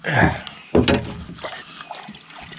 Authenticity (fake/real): real